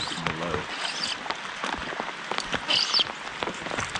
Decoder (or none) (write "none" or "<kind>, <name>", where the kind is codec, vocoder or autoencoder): none